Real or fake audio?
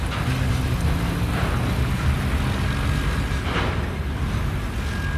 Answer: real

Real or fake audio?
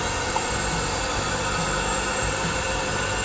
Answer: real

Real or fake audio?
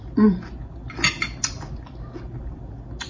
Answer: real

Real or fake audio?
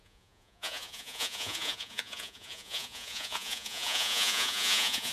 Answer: fake